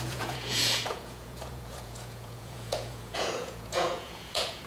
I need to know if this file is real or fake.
fake